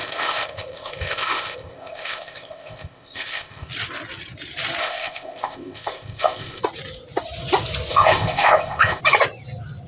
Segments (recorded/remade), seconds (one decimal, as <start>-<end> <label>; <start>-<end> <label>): 0.0-3.7 remade; 3.7-4.8 recorded; 4.8-6.6 remade; 6.6-7.9 recorded; 7.9-9.0 remade; 9.0-9.9 recorded